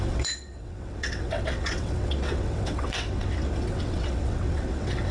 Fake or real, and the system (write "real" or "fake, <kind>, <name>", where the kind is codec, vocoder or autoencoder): fake, vocoder, WaveNeXt